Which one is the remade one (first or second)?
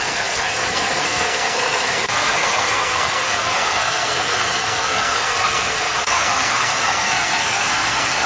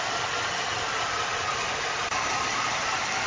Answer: first